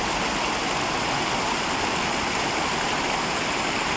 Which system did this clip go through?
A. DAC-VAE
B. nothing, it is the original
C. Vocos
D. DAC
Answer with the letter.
B